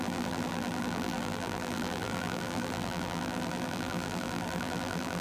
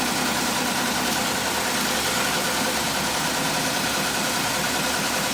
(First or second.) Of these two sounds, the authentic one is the second